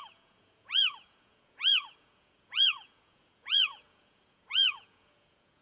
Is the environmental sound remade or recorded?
remade